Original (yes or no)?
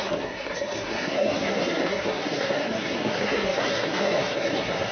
no